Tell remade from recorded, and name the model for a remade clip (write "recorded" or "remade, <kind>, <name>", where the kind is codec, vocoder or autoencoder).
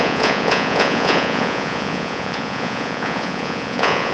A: remade, vocoder, Vocos